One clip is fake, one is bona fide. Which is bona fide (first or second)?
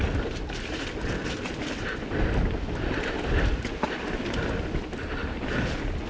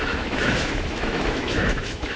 first